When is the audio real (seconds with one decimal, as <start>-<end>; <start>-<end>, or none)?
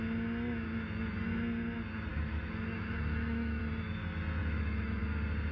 0.0-2.1; 3.6-4.4; 5.0-5.5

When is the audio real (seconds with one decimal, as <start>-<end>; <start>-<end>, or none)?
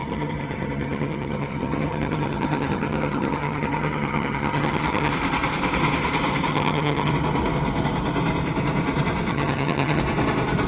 5.1-6.5; 7.1-9.3; 10.0-10.7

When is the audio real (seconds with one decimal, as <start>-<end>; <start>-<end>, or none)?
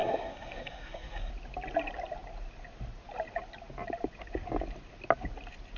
1.3-5.8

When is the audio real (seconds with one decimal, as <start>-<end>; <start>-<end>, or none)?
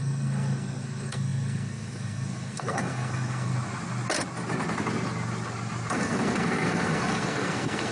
3.5-5.9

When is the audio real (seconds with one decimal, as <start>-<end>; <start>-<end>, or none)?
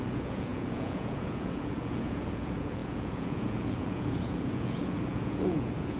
none